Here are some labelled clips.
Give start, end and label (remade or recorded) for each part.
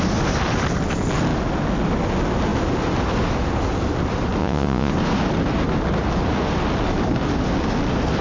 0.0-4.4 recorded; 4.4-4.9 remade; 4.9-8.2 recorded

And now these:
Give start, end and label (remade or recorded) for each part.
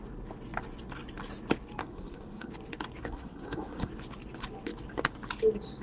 0.0-1.8 recorded; 1.8-2.5 remade; 2.5-3.0 recorded; 3.0-3.9 remade; 3.9-5.8 recorded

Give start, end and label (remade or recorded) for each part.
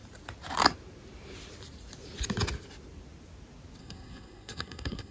0.0-3.8 recorded; 3.8-5.1 remade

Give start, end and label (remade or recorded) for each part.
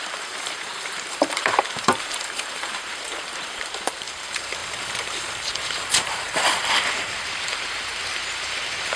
0.0-9.0 remade